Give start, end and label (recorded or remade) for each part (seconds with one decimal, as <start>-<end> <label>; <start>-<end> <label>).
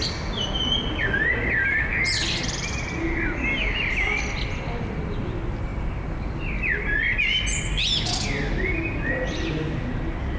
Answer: 0.0-10.4 recorded